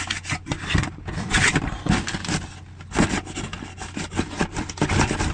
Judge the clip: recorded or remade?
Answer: recorded